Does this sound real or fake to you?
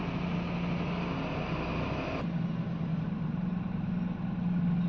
real